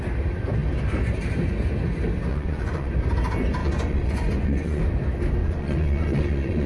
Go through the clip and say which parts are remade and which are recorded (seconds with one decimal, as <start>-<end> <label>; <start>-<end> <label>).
0.0-2.3 recorded; 2.3-2.9 remade; 2.9-3.6 recorded; 3.6-4.8 remade; 4.8-5.4 recorded; 5.4-6.7 remade